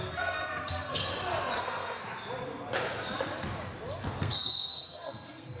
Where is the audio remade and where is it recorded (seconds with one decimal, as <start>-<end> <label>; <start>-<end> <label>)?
0.0-1.0 remade; 1.0-1.6 recorded; 1.6-2.0 remade; 2.0-4.2 recorded; 4.2-5.6 remade